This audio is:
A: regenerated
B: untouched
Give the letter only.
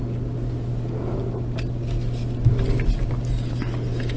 B